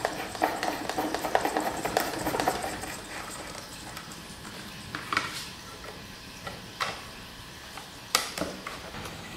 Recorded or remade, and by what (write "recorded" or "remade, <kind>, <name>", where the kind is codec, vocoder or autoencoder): remade, vocoder, BigVGAN v2